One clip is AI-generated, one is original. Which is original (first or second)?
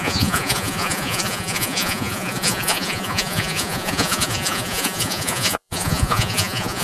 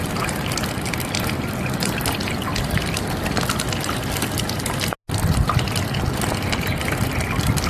second